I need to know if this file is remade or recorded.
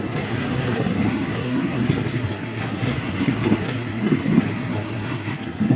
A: remade